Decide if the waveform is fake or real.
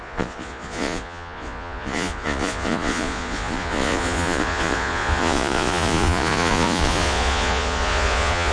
fake